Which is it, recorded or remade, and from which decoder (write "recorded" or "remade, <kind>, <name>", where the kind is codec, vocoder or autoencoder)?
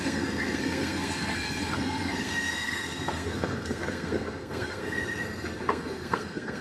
remade, codec, SNAC